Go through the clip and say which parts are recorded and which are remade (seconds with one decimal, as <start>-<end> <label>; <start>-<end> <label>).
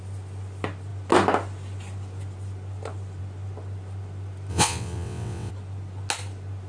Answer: 0.0-4.5 recorded; 4.5-5.5 remade; 5.5-6.7 recorded